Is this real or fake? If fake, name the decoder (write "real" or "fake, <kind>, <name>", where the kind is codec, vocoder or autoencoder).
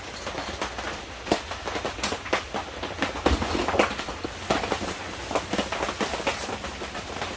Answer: real